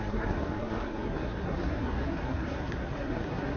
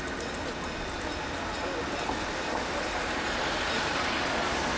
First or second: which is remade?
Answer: first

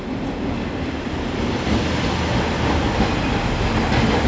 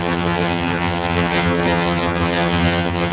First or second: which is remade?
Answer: second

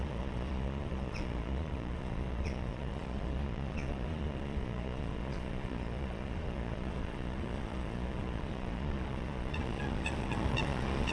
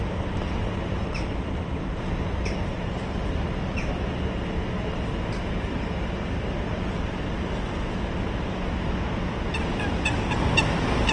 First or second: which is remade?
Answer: first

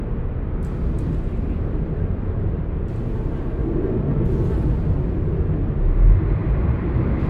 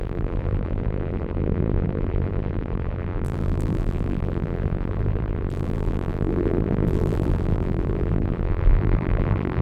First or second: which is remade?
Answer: second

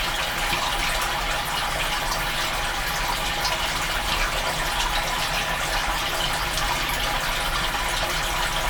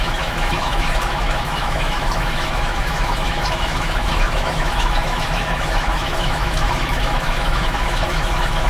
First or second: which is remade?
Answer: second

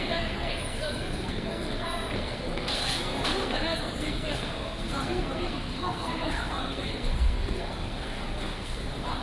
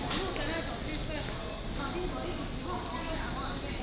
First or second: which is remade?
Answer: first